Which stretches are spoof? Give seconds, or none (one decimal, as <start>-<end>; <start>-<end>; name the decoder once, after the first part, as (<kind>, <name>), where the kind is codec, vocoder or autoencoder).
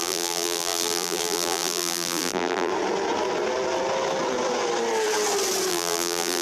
0.0-2.7 (vocoder, BigVGAN v2); 5.7-6.4